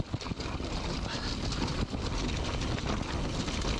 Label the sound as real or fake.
real